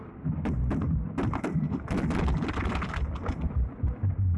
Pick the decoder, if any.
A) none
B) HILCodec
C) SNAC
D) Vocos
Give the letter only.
A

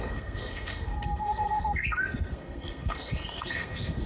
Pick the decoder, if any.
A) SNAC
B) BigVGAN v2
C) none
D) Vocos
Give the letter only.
A